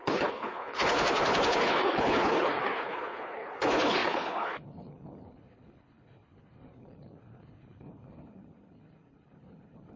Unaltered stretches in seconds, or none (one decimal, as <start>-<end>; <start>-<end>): none